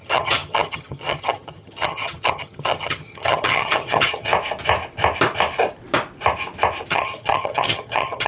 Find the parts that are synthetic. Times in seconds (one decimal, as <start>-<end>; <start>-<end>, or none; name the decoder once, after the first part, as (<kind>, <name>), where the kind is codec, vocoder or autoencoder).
0.0-4.3 (vocoder, HiFi-GAN); 6.9-8.3